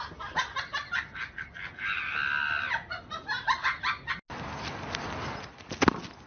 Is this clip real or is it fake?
real